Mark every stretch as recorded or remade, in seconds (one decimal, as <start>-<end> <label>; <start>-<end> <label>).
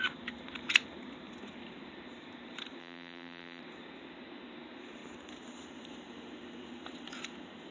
0.0-2.8 recorded; 2.8-3.6 remade; 3.6-7.7 recorded